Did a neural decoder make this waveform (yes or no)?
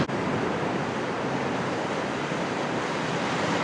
no